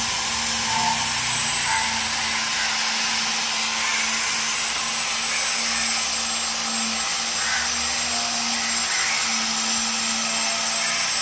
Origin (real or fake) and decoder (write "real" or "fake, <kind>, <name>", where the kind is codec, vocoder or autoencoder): real